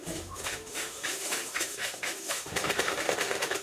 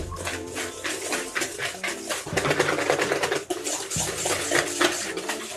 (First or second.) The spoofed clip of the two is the first